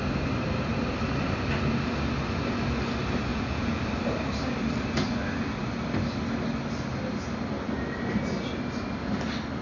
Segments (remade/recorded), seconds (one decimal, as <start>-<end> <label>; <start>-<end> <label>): 0.0-3.3 recorded; 3.3-3.8 remade; 3.8-9.6 recorded